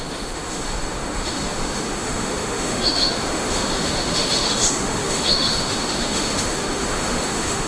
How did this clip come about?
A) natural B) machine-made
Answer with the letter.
B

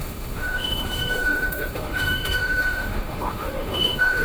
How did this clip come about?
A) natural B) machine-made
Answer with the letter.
B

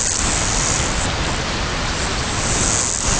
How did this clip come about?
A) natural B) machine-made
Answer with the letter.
A